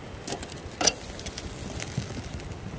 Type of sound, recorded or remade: recorded